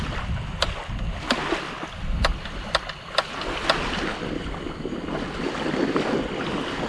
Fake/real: real